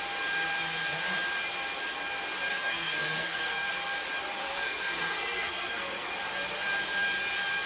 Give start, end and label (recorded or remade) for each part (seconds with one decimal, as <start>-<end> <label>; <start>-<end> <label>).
0.0-2.5 recorded; 2.5-3.7 remade; 3.7-4.4 recorded; 4.4-6.1 remade; 6.1-7.7 recorded